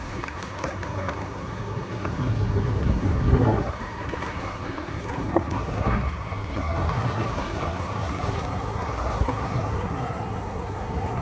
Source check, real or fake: fake